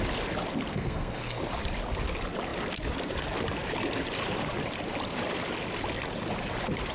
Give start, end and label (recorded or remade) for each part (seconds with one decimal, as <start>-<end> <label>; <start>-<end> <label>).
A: 0.0-0.7 recorded; 0.7-1.4 remade; 1.4-6.9 recorded